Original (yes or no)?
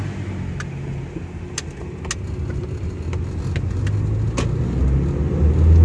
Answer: yes